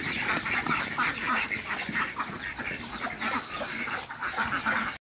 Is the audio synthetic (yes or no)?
yes